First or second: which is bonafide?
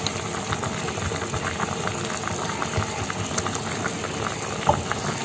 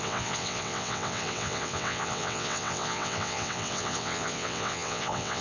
first